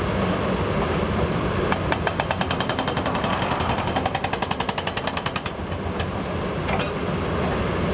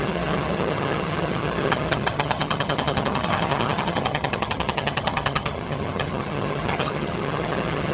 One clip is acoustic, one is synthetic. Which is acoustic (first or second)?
first